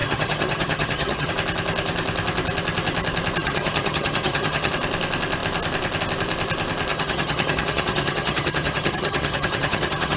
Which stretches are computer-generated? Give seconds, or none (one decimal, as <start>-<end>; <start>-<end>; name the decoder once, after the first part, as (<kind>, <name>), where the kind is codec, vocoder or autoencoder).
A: 0.0-1.3 (vocoder, HiFi-GAN); 3.4-4.7; 6.9-10.2